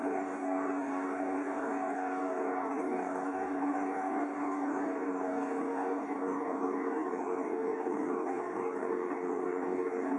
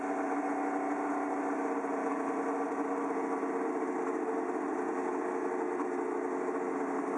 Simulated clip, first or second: first